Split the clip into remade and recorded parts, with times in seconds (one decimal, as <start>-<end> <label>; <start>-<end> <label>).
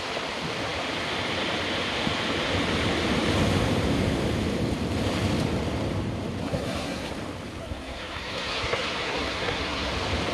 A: 0.0-6.4 recorded; 6.4-7.1 remade; 7.1-7.6 recorded; 7.6-9.9 remade; 9.9-10.3 recorded